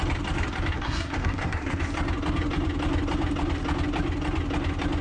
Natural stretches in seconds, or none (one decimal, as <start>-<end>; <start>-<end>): 0.0-0.7; 1.8-5.0